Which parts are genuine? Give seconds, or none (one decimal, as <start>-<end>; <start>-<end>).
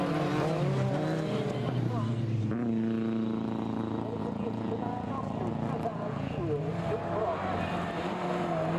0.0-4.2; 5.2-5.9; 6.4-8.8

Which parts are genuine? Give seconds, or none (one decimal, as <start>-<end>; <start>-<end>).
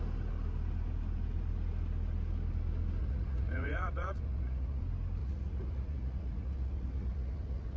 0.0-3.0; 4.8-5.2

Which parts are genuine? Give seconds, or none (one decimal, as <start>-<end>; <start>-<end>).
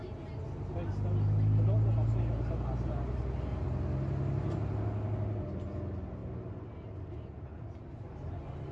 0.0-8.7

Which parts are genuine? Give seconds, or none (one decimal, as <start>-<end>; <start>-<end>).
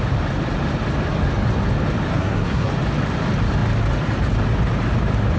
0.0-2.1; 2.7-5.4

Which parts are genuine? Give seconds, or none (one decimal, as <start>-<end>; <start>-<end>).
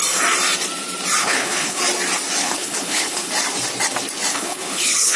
0.0-1.2; 1.8-2.4; 3.3-4.3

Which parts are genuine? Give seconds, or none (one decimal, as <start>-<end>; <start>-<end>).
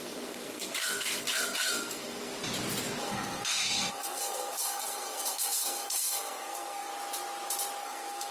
2.3-3.0; 6.9-7.8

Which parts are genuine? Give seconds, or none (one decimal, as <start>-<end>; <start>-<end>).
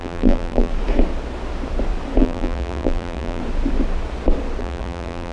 0.7-2.2; 3.4-4.6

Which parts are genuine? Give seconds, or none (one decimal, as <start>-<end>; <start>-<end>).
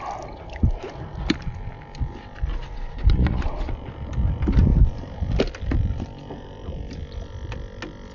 0.0-2.5; 3.7-8.1